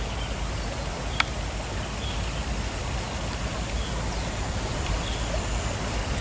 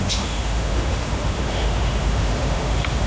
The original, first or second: first